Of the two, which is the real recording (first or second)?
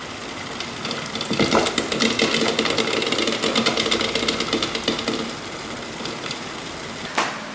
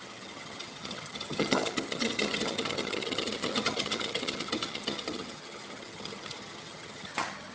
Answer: first